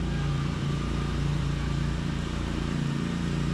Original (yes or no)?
no